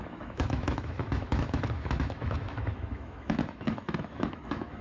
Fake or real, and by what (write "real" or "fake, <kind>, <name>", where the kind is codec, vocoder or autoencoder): fake, autoencoder, DAC-VAE